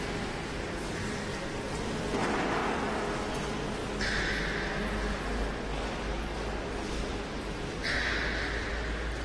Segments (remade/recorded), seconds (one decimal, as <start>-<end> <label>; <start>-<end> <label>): 0.0-9.2 recorded